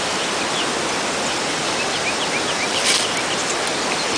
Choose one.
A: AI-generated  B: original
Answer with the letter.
B